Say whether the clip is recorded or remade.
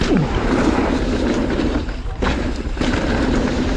remade